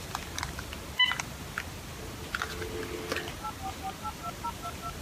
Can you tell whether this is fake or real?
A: real